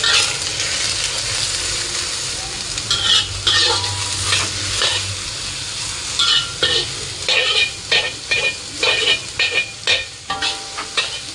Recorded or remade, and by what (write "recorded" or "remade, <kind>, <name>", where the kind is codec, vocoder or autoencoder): recorded